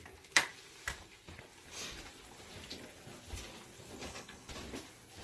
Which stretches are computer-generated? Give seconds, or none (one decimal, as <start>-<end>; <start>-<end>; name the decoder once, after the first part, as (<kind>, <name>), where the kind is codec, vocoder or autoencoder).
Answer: 4.0-4.5 (codec, HILCodec)